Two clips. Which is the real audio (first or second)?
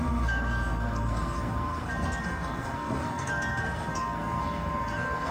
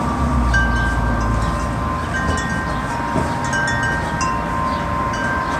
second